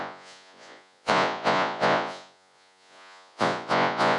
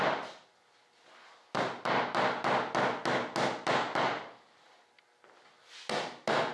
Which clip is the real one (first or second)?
second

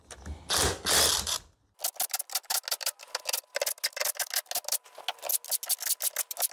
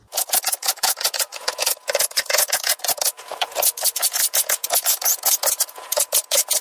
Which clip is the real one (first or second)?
first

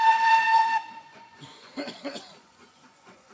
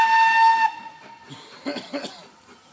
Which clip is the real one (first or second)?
second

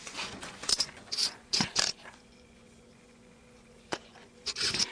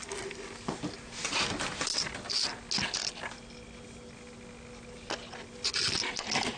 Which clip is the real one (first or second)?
second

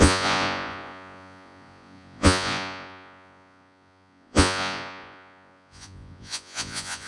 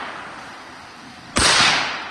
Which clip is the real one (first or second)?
second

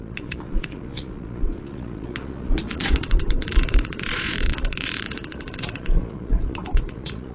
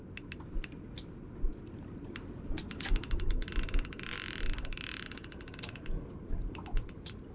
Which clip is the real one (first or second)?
second